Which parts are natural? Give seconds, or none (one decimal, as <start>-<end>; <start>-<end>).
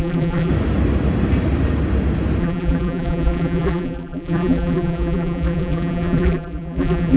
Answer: 0.5-2.4